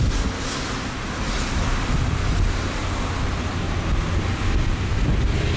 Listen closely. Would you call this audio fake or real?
real